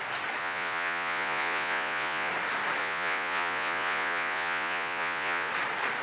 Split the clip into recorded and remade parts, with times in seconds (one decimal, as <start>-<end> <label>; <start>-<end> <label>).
0.0-0.4 recorded; 0.4-2.3 remade; 2.3-2.8 recorded; 2.8-5.5 remade; 5.5-6.0 recorded